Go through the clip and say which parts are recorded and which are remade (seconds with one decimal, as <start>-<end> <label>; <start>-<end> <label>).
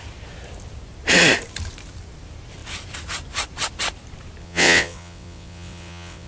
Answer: 0.0-4.4 recorded; 4.4-6.3 remade